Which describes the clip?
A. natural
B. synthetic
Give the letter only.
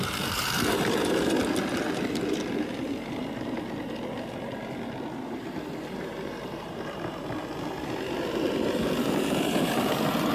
A